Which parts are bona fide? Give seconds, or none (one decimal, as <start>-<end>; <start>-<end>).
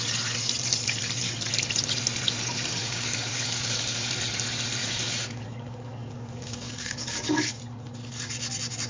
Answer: 0.0-2.8; 4.1-4.8; 7.6-8.9